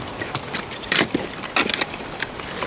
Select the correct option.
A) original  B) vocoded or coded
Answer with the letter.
A